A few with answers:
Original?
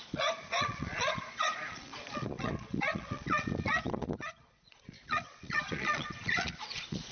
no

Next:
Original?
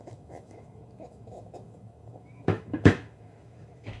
no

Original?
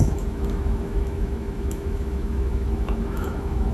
no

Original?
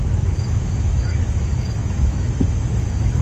no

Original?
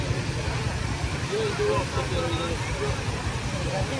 yes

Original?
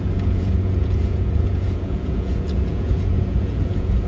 no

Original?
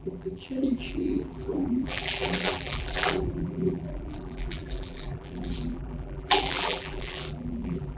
no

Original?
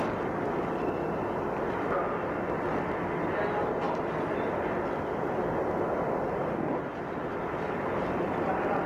yes